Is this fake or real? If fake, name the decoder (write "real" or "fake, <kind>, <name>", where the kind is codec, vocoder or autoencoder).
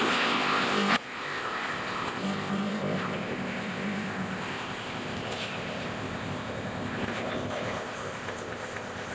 fake, codec, ZipCodec